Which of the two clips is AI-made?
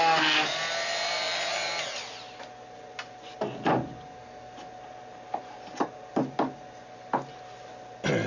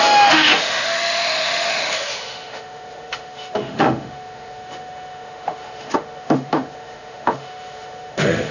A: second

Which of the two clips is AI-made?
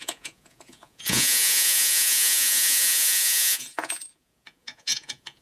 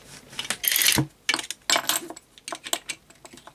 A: first